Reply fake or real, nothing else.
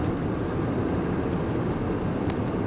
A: real